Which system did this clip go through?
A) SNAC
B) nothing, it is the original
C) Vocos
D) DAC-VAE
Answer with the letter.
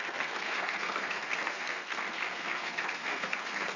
A